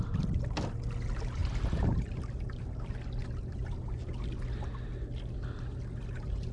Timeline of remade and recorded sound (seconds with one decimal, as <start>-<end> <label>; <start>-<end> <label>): 0.0-6.5 recorded